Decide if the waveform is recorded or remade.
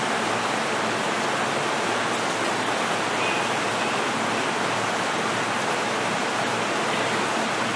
recorded